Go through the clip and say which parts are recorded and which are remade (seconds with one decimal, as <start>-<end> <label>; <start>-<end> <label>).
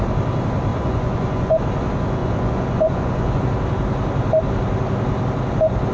0.0-0.7 recorded; 0.7-1.6 remade; 1.6-2.2 recorded; 2.2-3.4 remade; 3.4-5.9 recorded